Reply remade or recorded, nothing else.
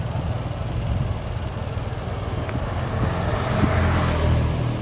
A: recorded